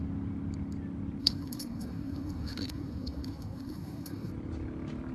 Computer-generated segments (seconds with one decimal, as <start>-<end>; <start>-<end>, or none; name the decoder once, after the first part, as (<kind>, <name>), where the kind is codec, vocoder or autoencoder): 1.2-4.3 (codec, SNAC)